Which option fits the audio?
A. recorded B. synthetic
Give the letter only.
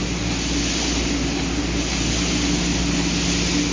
A